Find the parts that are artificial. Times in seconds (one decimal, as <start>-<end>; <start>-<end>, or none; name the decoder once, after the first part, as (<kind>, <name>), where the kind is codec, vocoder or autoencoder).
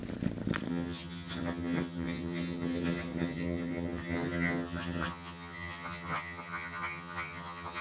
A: 0.7-7.8 (vocoder, HiFi-GAN)